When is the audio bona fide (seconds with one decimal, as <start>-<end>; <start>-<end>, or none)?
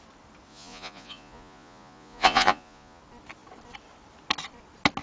0.0-0.5; 3.0-5.0